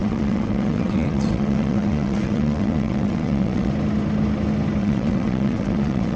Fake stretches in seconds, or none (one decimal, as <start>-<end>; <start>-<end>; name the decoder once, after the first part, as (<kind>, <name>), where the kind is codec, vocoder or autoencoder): 0.0-3.7 (vocoder, WaveNeXt); 4.8-6.2